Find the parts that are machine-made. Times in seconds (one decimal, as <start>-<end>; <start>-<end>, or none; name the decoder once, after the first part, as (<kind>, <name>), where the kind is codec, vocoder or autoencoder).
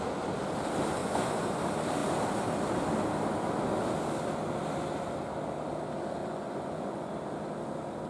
1.0-1.6 (vocoder, Vocos); 6.2-7.1